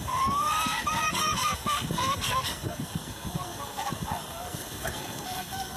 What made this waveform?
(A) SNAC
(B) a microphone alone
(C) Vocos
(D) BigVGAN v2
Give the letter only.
A